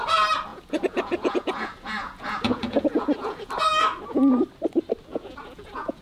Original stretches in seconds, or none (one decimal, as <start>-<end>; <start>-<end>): 0.0-0.5; 3.5-5.1